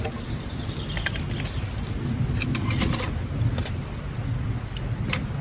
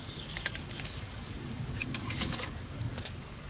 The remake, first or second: second